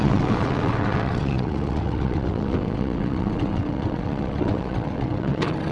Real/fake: fake